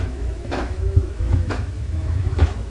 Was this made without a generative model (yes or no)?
no